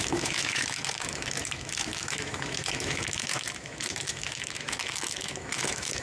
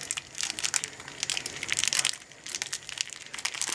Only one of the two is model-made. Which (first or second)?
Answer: first